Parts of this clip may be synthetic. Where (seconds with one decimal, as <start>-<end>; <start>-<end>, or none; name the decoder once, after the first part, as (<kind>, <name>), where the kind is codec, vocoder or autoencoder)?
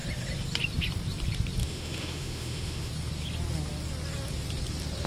1.6-2.9 (autoencoder, DAC-VAE)